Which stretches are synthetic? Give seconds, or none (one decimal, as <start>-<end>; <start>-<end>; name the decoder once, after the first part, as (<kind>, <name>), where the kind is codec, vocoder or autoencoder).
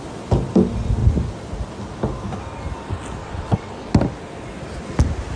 3.2-3.7 (vocoder, WaveNeXt)